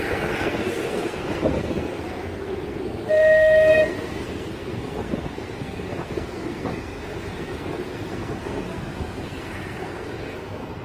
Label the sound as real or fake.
fake